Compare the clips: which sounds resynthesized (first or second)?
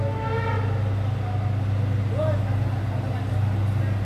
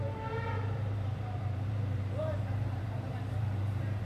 second